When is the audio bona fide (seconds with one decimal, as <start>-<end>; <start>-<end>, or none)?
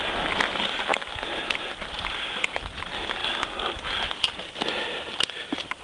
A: 0.0-5.8